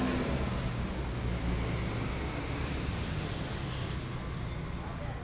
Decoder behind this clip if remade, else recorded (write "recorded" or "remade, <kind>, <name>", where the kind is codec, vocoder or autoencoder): recorded